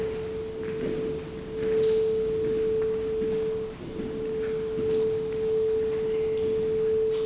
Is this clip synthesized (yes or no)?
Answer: no